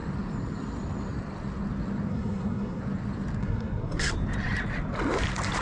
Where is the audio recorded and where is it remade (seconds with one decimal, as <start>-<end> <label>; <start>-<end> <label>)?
0.0-2.1 recorded; 2.1-2.8 remade; 2.8-3.4 recorded; 3.4-4.1 remade; 4.1-5.6 recorded